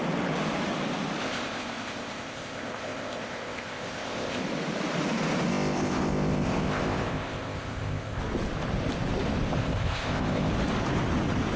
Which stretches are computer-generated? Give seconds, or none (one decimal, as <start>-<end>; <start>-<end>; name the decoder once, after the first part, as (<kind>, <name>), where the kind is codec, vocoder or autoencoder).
1.2-4.4 (codec, ZipCodec); 5.5-8.2; 9.6-10.5

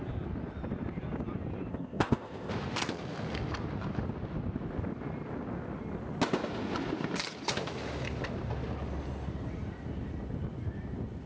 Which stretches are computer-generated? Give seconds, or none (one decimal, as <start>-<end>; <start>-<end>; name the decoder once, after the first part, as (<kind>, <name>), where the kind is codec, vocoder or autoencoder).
1.7-2.5 (codec, ZipCodec)

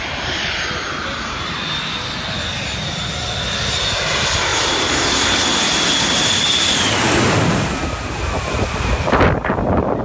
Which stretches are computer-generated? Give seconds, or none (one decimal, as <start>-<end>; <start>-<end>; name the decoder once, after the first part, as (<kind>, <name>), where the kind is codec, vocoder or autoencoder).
none

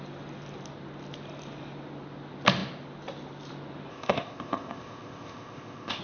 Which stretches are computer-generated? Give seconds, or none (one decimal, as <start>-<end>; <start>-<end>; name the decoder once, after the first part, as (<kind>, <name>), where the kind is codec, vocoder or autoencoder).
3.9-6.0 (codec, ZipCodec)

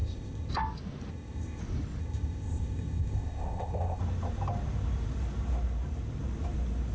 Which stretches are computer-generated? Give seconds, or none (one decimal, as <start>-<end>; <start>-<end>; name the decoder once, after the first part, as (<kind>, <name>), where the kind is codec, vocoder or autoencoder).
0.0-0.5 (codec, ZipCodec); 1.1-1.6; 2.0-4.0